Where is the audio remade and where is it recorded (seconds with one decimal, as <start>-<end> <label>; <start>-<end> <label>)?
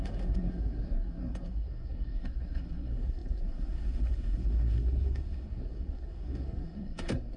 0.0-7.4 remade